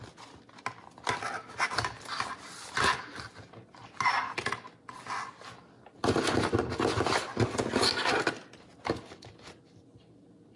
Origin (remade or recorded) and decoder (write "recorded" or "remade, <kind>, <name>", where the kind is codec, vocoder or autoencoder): recorded